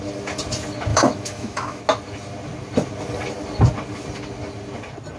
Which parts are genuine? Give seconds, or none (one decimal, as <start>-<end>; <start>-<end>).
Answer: 0.0-0.9; 1.8-5.2